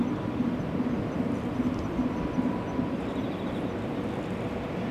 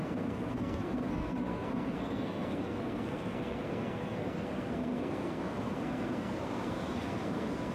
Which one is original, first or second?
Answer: first